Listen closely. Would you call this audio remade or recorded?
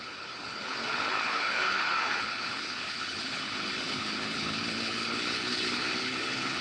remade